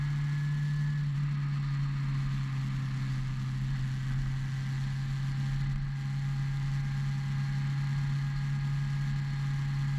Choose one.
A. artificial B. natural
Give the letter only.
B